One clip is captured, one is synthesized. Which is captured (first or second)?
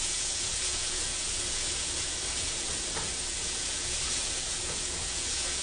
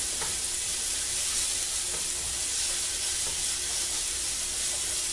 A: second